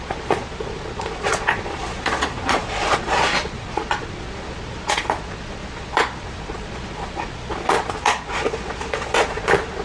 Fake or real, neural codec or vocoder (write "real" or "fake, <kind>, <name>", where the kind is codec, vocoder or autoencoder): fake, vocoder, Vocos